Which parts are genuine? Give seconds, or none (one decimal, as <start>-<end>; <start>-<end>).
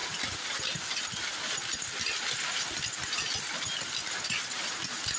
0.0-5.2